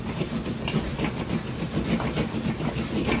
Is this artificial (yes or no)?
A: no